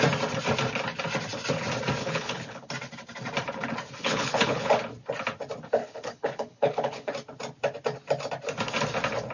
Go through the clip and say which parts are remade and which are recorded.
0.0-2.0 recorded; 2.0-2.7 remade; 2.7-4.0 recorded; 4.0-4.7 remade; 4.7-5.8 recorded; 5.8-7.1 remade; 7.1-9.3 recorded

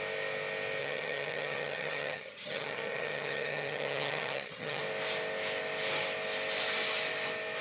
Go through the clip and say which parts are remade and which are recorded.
0.0-0.8 recorded; 0.8-4.8 remade; 4.8-7.6 recorded

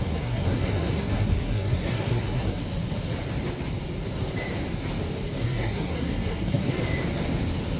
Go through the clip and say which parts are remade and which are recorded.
0.0-2.6 remade; 2.6-5.4 recorded; 5.4-6.8 remade; 6.8-7.8 recorded

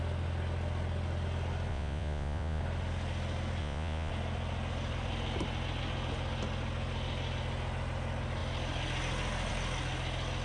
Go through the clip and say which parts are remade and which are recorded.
0.0-1.7 recorded; 1.7-2.6 remade; 2.6-3.6 recorded; 3.6-4.1 remade; 4.1-10.4 recorded